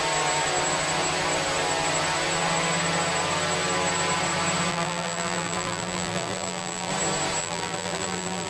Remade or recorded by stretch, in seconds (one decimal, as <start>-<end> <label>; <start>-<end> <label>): 0.0-4.7 recorded; 4.7-6.9 remade; 6.9-7.4 recorded; 7.4-8.5 remade